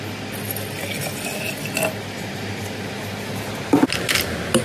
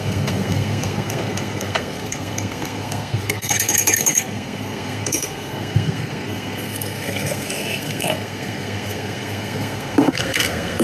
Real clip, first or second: first